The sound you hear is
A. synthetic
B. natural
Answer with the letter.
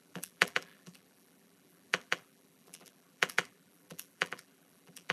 A